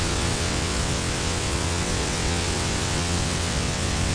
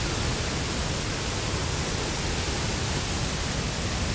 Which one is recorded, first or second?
second